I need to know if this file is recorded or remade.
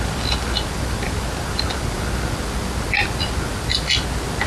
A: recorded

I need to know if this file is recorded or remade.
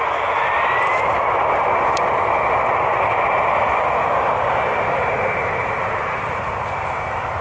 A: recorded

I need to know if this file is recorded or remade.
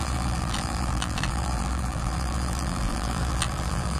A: remade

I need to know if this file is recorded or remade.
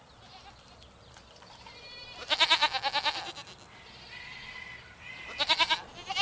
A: recorded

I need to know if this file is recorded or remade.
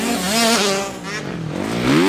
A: recorded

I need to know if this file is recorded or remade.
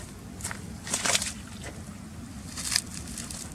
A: recorded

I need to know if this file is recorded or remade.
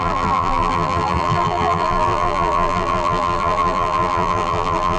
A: remade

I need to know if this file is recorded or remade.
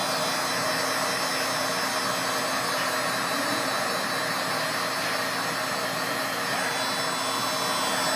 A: recorded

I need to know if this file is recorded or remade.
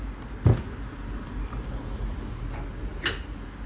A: recorded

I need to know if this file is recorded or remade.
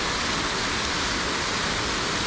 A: recorded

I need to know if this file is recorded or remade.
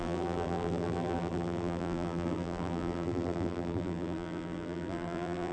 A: remade